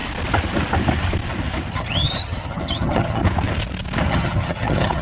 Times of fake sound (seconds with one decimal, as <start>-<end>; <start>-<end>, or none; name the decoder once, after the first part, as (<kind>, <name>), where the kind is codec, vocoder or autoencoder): 1.7-3.2 (vocoder, HiFi-GAN); 4.1-5.0